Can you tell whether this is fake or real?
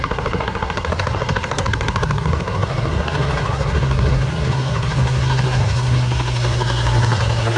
fake